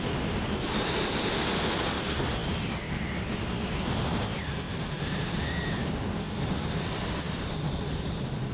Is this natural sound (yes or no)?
yes